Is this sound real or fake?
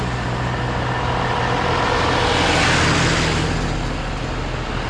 real